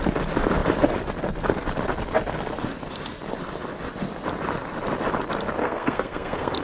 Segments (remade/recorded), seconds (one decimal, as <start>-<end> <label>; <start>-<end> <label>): 0.0-5.6 recorded; 5.6-6.6 remade